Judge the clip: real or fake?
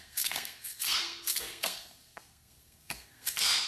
fake